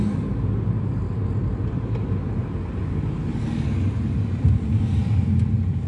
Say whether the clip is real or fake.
real